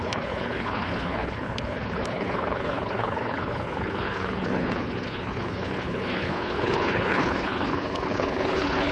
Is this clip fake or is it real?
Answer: fake